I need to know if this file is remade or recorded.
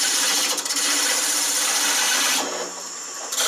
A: recorded